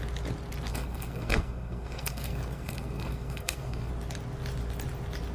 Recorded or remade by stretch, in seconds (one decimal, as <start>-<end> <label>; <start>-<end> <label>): 0.0-0.7 recorded; 0.7-3.9 remade; 3.9-5.3 recorded